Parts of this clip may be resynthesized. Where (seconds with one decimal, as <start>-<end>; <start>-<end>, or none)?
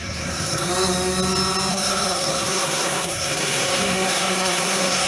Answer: 0.0-0.7; 1.7-5.1